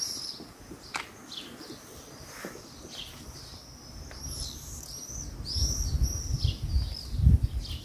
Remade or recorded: recorded